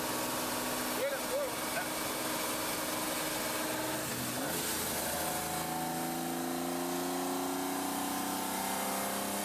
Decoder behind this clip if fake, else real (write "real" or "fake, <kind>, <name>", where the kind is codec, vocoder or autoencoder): real